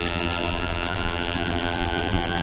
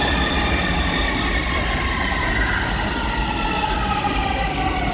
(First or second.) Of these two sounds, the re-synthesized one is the first